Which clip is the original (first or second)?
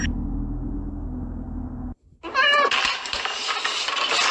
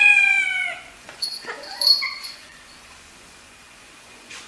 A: first